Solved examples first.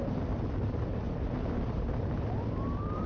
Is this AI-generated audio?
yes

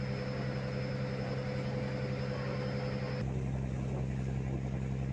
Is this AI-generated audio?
no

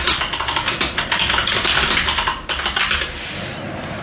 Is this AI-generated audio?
no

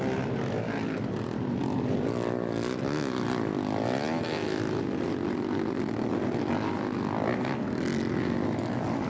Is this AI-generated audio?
no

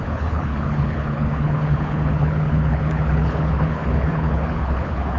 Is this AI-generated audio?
yes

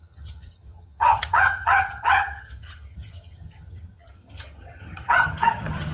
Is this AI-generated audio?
yes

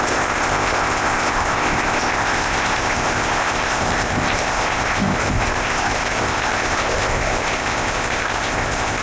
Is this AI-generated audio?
yes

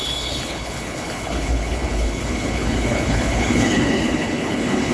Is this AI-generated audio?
yes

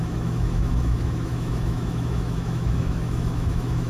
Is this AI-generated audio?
yes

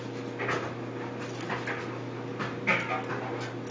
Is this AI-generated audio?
no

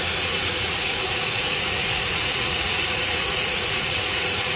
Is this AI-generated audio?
yes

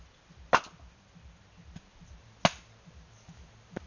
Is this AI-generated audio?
no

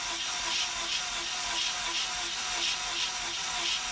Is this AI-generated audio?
no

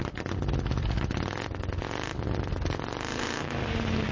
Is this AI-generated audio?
no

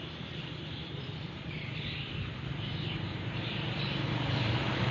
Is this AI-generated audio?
yes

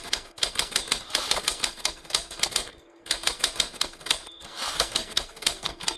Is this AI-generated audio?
yes